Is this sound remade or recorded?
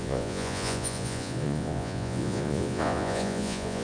remade